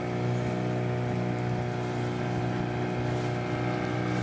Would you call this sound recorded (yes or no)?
yes